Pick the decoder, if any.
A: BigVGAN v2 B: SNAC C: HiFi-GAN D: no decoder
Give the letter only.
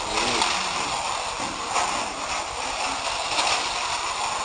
D